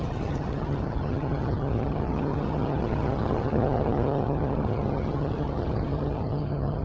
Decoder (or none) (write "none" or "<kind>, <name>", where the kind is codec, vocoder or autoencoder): vocoder, HiFi-GAN